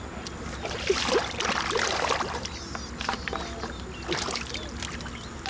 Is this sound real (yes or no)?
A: yes